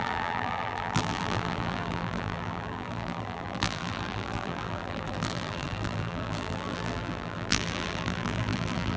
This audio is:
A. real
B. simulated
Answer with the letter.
B